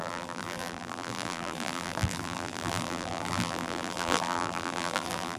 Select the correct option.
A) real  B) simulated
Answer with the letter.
B